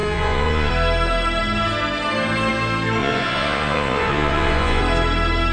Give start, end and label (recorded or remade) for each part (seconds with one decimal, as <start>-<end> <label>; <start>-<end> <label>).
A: 0.0-0.7 remade; 0.7-3.0 recorded; 3.0-4.8 remade; 4.8-5.5 recorded